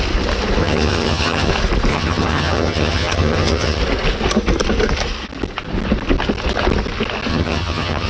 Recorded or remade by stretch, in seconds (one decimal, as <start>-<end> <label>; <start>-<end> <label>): 0.0-0.6 recorded; 0.6-1.5 remade; 1.5-1.9 recorded; 1.9-3.8 remade; 3.8-7.3 recorded; 7.3-8.1 remade